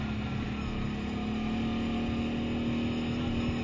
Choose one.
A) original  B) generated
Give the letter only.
A